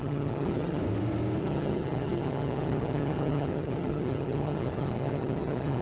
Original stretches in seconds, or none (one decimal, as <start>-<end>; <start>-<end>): 0.8-1.4